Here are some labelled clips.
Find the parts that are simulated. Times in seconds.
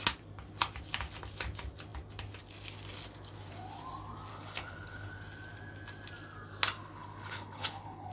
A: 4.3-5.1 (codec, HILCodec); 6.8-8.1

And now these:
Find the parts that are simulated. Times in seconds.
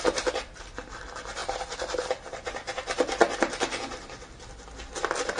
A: none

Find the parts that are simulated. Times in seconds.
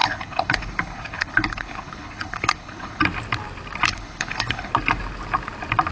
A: 0.0-3.0 (codec, HILCodec); 3.9-4.7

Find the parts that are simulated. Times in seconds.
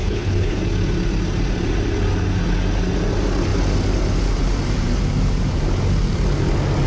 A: 0.0-0.6 (codec, HILCodec)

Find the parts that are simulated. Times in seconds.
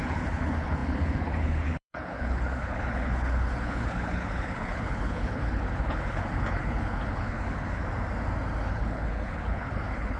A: 0.0-7.8 (codec, HILCodec); 8.7-10.2